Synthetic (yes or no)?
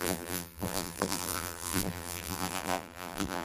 yes